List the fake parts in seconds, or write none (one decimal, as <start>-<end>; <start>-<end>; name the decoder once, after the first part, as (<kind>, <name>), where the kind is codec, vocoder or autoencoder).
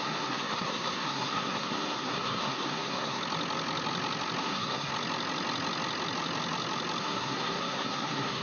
0.0-3.2 (codec, SNAC); 4.4-4.9; 7.0-8.4